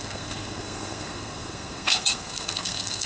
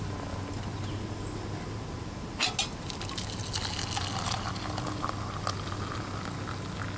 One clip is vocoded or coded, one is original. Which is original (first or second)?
second